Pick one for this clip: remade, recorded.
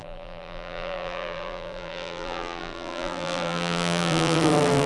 remade